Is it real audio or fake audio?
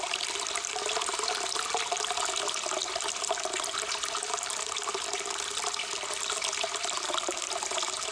real